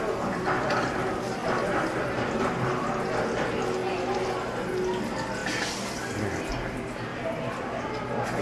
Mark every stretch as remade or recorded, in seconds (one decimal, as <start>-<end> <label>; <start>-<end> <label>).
0.0-8.4 recorded